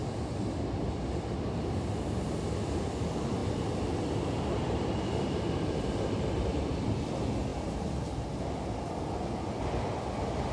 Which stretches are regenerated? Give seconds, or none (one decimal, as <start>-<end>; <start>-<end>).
none